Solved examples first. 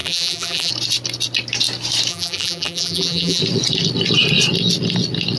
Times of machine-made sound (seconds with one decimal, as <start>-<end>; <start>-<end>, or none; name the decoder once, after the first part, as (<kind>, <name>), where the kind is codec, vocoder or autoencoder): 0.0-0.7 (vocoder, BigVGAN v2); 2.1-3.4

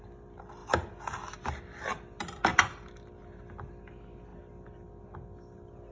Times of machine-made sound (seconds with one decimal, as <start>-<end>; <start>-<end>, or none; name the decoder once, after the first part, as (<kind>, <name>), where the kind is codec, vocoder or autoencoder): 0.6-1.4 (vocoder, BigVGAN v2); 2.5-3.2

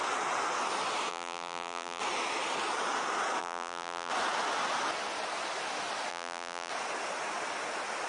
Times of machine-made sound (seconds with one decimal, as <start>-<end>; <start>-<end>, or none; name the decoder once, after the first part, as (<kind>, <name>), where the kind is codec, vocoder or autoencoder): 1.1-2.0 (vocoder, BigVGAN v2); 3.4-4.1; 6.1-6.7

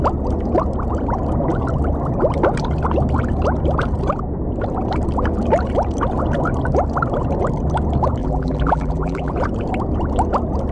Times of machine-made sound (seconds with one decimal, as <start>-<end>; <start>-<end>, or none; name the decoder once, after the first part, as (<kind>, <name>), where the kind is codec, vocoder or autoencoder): 8.2-9.3 (vocoder, BigVGAN v2)